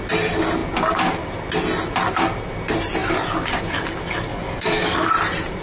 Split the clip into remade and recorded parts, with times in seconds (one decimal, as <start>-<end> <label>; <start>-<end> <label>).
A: 0.0-4.3 recorded; 4.3-5.1 remade; 5.1-5.6 recorded